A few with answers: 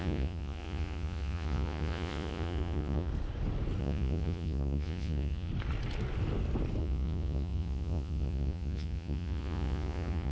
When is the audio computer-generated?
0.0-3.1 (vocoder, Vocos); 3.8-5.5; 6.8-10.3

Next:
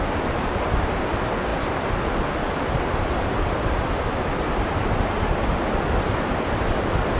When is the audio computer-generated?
none

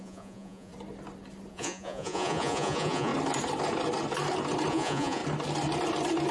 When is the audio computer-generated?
0.0-0.7 (vocoder, Vocos); 1.5-3.1; 4.7-5.2

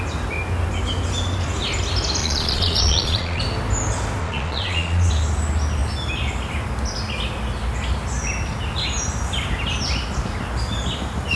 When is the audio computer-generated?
2.2-3.4 (vocoder, Vocos); 4.2-5.1

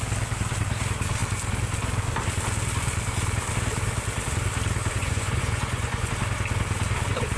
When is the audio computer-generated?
5.0-6.1 (vocoder, Vocos)

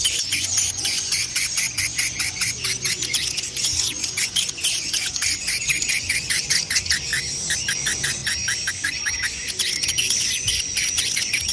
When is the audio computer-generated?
0.0-7.1 (vocoder, Vocos); 7.7-8.2; 8.7-11.5